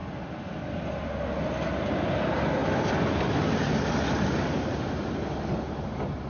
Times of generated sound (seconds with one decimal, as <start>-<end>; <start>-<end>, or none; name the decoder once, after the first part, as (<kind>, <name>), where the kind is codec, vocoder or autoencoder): none